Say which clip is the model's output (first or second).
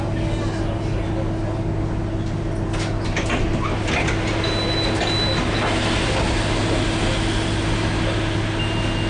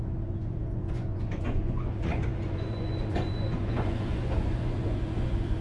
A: second